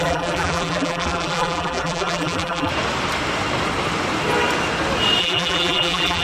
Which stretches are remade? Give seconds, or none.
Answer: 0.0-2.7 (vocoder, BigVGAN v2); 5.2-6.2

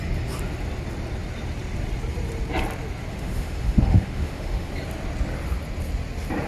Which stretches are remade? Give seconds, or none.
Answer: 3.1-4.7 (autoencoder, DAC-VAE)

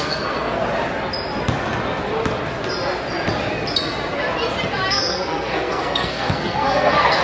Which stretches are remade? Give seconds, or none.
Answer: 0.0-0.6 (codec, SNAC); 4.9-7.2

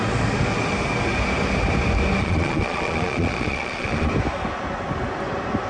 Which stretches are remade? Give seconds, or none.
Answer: 2.2-4.1 (vocoder, Vocos)